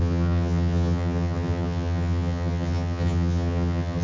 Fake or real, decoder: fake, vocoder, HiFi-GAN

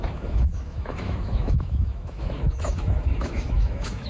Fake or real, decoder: fake, autoencoder, DAC-VAE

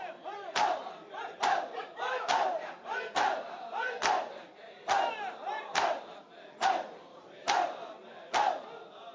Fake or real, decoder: real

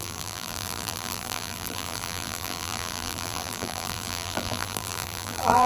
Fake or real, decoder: fake, vocoder, BigVGAN v2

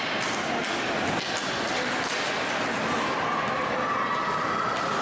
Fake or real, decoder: real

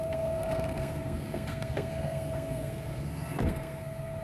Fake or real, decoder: fake, codec, SNAC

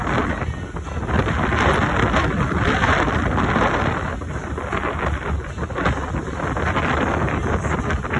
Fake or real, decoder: real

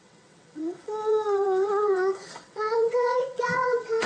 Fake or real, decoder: fake, vocoder, WaveNeXt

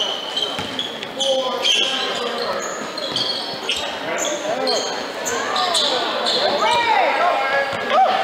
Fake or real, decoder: real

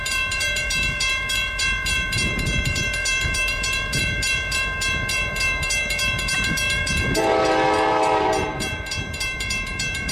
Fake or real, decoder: fake, vocoder, BigVGAN v2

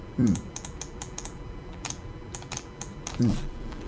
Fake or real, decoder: fake, vocoder, BigVGAN v2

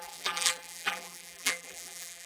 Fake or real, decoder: fake, vocoder, BigVGAN v2